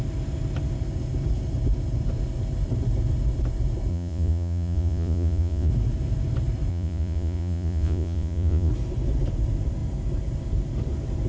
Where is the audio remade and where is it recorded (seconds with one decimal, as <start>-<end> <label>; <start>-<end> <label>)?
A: 0.0-3.9 recorded; 3.9-5.7 remade; 5.7-6.7 recorded; 6.7-8.7 remade; 8.7-11.3 recorded